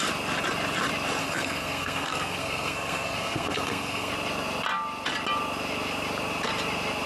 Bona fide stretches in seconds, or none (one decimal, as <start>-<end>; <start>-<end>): 0.0-1.2; 4.1-7.1

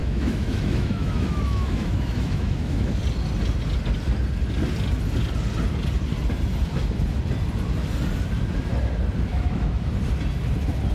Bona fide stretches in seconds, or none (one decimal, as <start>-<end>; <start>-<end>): 3.0-9.3; 9.9-10.9

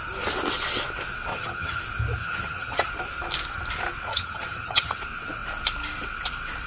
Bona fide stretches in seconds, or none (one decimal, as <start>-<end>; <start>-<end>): 0.0-1.3; 1.8-2.2; 2.9-4.1; 5.0-6.7